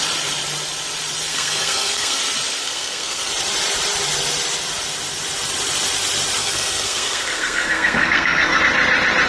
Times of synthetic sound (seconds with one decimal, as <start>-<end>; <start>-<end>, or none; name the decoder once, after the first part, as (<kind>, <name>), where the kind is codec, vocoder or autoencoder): 1.3-2.2 (codec, SNAC); 2.6-3.3; 6.4-8.6